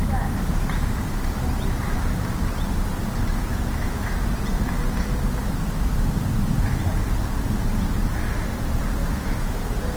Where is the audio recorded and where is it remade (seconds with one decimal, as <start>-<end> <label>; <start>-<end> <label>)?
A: 0.0-3.5 recorded; 3.5-4.3 remade; 4.3-9.0 recorded; 9.0-9.6 remade; 9.6-10.0 recorded